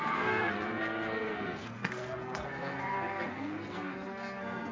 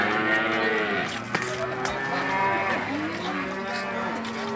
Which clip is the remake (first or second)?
first